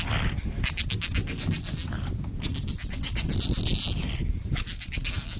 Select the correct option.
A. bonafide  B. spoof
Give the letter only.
A